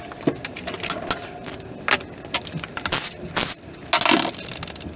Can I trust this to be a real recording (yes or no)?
yes